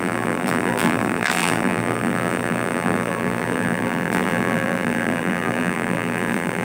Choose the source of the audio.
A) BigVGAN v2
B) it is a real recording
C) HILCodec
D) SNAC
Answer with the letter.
A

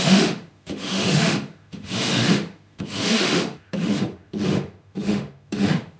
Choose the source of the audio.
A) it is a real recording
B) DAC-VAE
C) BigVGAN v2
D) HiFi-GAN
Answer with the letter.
B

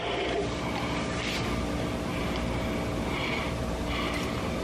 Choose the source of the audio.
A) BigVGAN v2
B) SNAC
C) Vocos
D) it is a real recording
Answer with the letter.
D